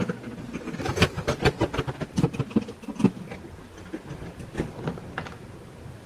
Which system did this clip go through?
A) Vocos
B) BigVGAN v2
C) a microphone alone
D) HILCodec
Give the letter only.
C